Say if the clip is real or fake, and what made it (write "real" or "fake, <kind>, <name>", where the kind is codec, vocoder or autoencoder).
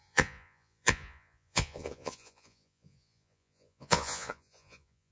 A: fake, vocoder, Vocos